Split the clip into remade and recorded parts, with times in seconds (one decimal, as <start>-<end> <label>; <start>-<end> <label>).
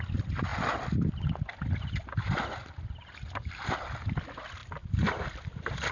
0.0-5.9 recorded